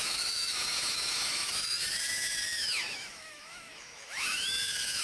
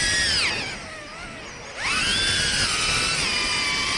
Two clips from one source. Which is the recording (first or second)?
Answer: second